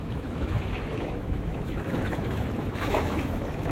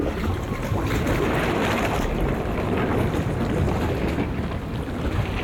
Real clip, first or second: second